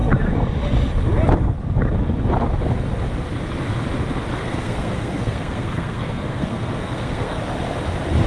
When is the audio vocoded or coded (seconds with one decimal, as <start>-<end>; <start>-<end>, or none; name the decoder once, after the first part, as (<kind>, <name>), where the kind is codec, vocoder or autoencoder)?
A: 4.4-7.4 (codec, SNAC)